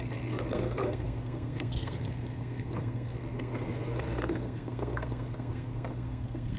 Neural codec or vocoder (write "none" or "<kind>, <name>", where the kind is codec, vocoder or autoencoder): codec, SNAC